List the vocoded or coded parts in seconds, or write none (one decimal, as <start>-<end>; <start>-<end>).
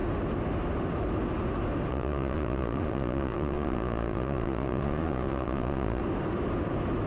1.9-6.0